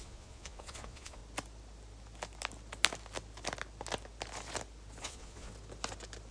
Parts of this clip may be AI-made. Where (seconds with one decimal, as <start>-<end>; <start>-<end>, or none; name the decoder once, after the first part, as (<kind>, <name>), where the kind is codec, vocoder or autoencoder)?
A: 0.0-1.2 (vocoder, Vocos); 5.0-5.5